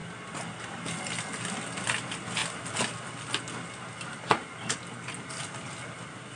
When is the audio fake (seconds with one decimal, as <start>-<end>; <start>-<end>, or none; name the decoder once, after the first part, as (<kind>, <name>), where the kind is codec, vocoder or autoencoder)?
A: none